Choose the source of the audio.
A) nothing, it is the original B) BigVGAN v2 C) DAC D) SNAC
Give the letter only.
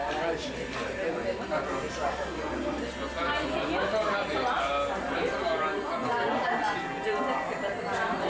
A